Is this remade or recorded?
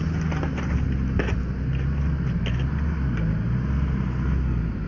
recorded